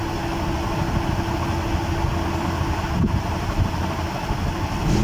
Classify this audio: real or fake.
real